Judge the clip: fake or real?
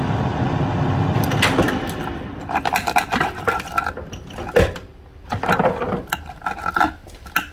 real